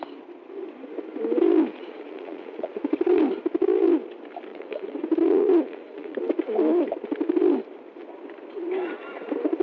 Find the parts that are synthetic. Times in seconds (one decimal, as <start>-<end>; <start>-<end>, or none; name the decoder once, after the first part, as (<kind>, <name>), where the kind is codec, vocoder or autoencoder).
1.7-3.2 (vocoder, Vocos); 4.5-6.2